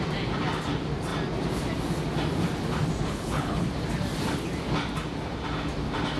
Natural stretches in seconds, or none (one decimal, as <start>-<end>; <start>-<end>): 0.0-3.0; 3.7-6.2

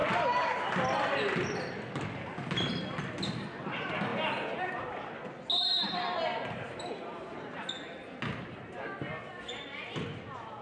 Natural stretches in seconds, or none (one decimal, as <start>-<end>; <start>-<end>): 0.0-10.6

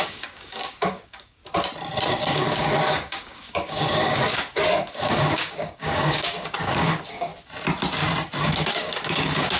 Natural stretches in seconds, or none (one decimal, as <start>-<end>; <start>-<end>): 1.4-2.1; 7.3-8.4